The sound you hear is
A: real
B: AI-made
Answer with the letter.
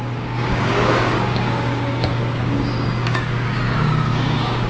B